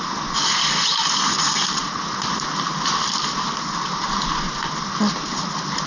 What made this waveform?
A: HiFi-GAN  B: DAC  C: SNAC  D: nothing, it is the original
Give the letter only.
D